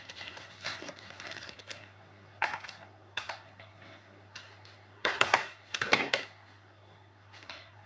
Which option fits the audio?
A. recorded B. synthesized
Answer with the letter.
B